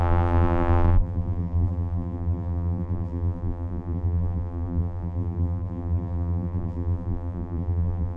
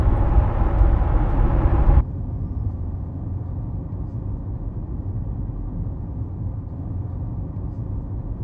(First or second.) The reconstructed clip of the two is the first